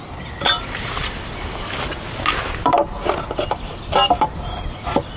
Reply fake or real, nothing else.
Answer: real